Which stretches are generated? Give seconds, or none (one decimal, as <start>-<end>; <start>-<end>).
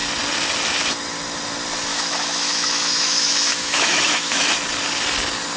1.9-4.5